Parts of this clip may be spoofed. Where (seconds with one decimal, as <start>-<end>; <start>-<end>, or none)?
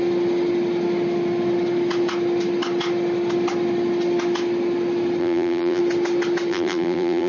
5.2-5.8; 6.5-7.3